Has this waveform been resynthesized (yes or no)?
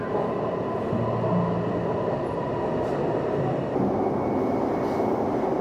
no